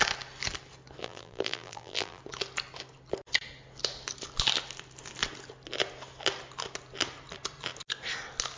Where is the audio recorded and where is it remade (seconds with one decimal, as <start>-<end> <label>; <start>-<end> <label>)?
0.0-1.0 recorded; 1.0-2.2 remade; 2.2-8.6 recorded